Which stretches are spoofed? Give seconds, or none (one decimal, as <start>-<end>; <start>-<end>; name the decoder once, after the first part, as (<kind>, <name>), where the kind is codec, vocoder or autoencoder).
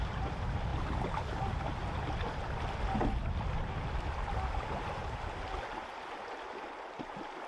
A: none